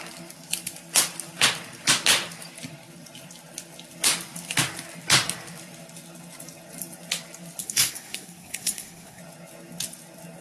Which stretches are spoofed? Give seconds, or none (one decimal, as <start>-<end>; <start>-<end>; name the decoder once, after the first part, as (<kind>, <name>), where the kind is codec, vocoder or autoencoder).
7.6-9.2 (codec, SNAC)